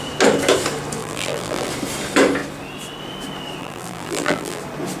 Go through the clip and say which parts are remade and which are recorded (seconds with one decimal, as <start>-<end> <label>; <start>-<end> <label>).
0.0-1.0 recorded; 1.0-1.7 remade; 1.7-3.6 recorded; 3.6-4.6 remade; 4.6-5.0 recorded